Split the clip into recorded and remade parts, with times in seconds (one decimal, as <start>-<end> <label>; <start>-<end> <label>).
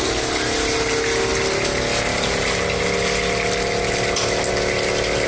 0.0-5.3 recorded